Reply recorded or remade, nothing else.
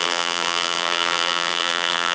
remade